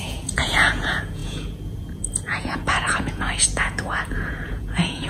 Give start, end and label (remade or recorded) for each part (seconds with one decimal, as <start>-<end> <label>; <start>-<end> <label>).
0.0-5.1 remade